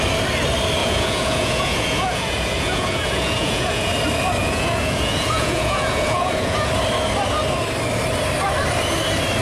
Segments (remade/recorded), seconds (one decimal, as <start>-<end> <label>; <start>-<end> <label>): 0.0-0.8 recorded; 0.8-3.9 remade; 3.9-4.4 recorded; 4.4-6.7 remade; 6.7-9.4 recorded